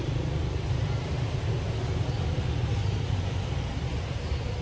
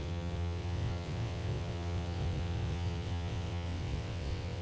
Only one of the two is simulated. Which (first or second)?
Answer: second